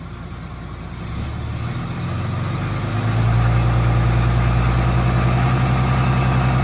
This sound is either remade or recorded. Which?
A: recorded